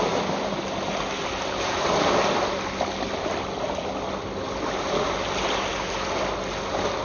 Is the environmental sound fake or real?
real